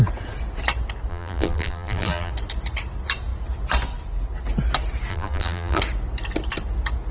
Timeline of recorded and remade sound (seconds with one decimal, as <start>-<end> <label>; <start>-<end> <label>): 0.0-1.1 recorded; 1.1-2.3 remade; 2.3-5.1 recorded; 5.1-5.8 remade; 5.8-7.1 recorded